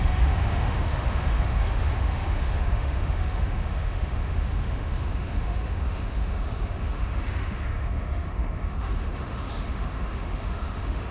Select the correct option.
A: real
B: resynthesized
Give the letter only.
B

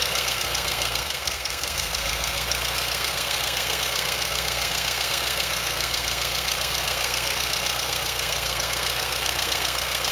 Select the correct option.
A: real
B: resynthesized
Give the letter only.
B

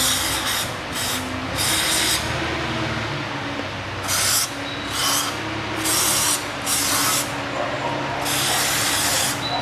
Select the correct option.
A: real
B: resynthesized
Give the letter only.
A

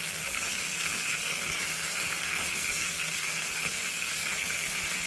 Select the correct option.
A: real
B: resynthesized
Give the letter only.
B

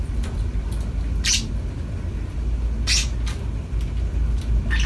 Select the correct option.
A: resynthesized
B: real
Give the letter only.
B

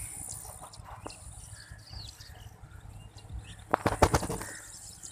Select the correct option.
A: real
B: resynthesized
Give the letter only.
A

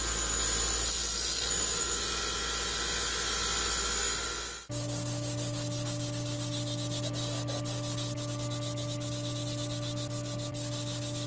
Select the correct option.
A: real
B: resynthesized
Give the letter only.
A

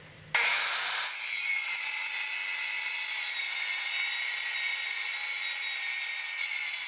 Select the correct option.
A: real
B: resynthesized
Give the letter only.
A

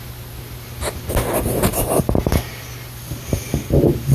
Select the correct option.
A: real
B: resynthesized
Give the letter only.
A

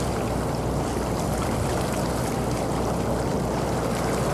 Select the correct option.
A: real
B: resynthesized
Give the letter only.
A